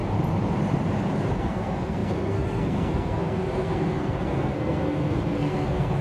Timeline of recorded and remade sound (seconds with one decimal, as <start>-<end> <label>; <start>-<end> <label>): 0.0-1.4 recorded; 1.4-6.0 remade